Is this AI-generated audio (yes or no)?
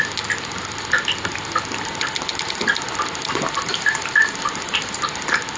no